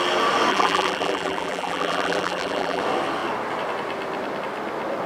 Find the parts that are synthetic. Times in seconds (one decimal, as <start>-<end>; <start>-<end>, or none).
0.5-2.8